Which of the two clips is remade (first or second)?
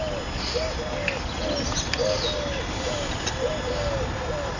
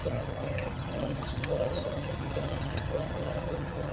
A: second